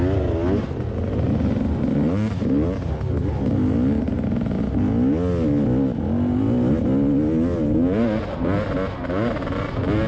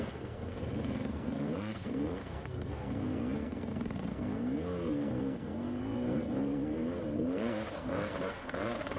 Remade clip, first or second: second